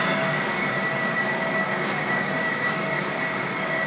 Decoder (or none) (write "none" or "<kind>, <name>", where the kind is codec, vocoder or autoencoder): codec, DAC